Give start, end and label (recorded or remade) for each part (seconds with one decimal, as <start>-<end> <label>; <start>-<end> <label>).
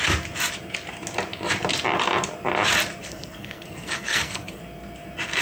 0.0-3.0 recorded; 3.0-4.6 remade; 4.6-5.4 recorded